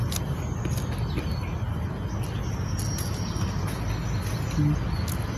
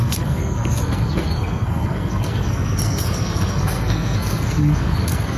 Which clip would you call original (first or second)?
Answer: first